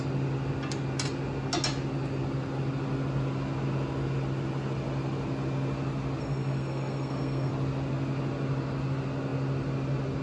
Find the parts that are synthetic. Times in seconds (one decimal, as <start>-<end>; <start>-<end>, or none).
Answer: 6.2-7.5